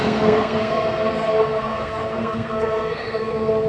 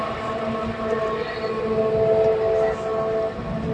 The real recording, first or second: second